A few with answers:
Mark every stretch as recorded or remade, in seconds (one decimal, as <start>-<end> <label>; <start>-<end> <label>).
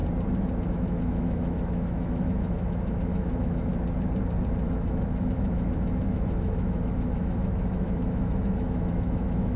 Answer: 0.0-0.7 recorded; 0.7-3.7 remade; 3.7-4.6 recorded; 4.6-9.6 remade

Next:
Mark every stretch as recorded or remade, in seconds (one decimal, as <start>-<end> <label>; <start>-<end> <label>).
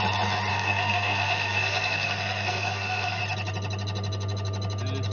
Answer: 0.0-0.5 recorded; 0.5-3.2 remade; 3.2-5.1 recorded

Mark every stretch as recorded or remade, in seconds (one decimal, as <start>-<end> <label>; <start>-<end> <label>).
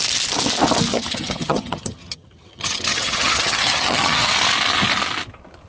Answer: 0.0-0.9 recorded; 0.9-4.3 remade; 4.3-5.7 recorded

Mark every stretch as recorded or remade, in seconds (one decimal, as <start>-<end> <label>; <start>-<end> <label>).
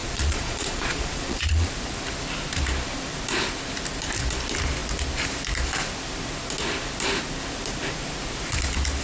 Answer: 0.0-1.7 remade; 1.7-9.0 recorded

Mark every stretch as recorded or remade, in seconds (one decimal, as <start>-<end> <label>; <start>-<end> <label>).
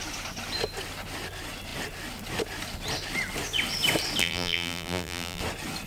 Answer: 0.0-4.2 recorded; 4.2-5.4 remade; 5.4-5.9 recorded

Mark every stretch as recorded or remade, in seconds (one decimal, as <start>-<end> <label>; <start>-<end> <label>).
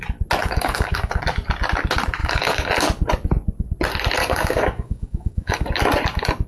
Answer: 0.0-0.4 recorded; 0.4-1.2 remade; 1.2-2.2 recorded; 2.2-2.7 remade; 2.7-4.2 recorded; 4.2-5.7 remade; 5.7-6.5 recorded